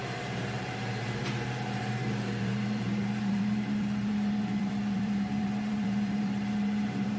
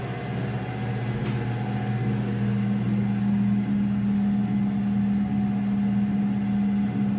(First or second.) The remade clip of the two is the first